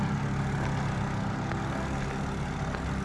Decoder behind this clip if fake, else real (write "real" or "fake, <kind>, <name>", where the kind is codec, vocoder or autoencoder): real